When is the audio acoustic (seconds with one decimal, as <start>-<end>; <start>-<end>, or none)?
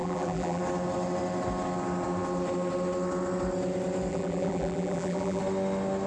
0.6-4.1; 5.4-6.1